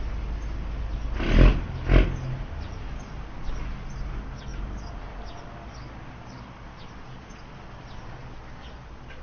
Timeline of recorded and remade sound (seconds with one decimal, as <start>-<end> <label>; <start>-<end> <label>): 0.0-9.2 recorded